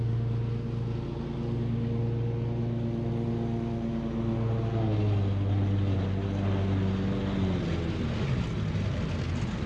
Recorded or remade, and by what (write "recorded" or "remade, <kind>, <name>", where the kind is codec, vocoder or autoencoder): recorded